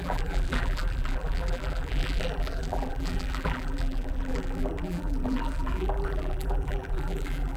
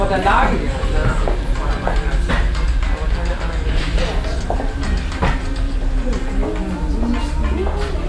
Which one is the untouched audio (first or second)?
second